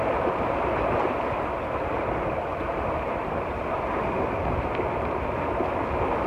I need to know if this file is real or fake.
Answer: real